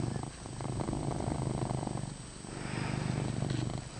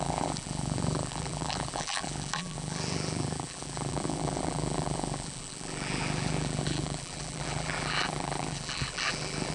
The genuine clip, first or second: first